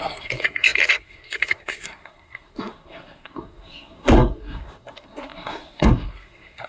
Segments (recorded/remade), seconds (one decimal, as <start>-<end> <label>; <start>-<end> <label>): 0.0-6.7 remade